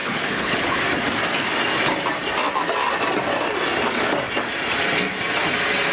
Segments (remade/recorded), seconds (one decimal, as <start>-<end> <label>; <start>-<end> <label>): 0.0-0.8 remade; 0.8-5.9 recorded